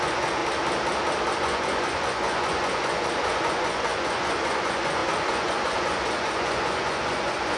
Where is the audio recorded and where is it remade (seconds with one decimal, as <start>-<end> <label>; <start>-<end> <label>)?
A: 0.0-0.4 remade; 0.4-1.4 recorded; 1.4-7.6 remade